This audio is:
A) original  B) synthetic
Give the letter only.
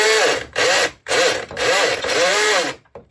B